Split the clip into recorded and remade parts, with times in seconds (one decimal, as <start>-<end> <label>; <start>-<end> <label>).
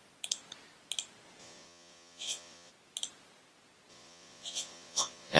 0.0-1.4 recorded; 1.4-2.7 remade; 2.7-3.9 recorded; 3.9-5.4 remade